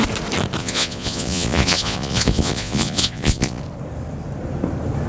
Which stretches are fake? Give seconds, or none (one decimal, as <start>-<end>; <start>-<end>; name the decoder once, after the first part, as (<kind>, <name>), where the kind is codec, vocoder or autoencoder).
0.6-3.6 (vocoder, Vocos)